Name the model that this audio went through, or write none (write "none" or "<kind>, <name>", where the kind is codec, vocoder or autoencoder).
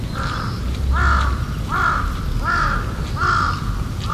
none